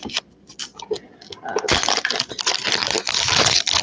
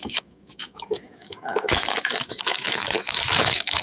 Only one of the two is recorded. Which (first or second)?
first